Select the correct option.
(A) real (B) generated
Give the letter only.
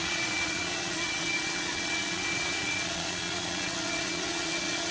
B